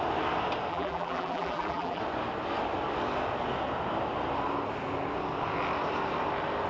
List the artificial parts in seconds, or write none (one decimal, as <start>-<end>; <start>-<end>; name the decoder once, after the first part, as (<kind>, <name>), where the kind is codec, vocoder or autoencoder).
0.7-2.0 (vocoder, BigVGAN v2)